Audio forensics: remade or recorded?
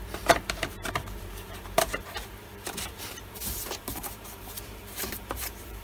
remade